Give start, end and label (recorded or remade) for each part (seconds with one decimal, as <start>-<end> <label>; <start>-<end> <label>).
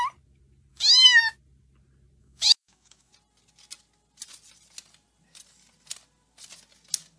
0.0-0.7 recorded; 0.7-1.3 remade; 1.3-2.2 recorded; 2.2-3.1 remade; 3.1-7.2 recorded